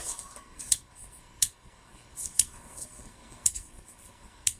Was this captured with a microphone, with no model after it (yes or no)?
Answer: no